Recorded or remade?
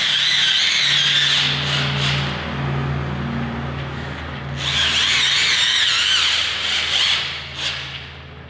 recorded